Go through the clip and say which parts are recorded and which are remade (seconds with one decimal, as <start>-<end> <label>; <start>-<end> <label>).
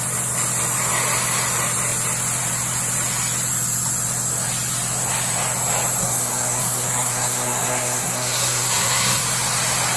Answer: 0.0-6.0 recorded; 6.0-9.2 remade; 9.2-10.0 recorded